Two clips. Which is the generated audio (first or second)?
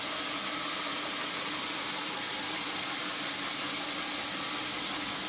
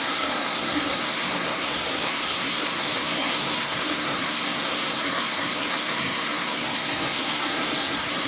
second